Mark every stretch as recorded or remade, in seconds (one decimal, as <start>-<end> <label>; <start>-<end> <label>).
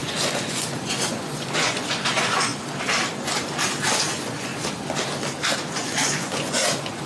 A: 0.0-2.5 remade; 2.5-3.9 recorded; 3.9-4.5 remade; 4.5-5.7 recorded; 5.7-7.1 remade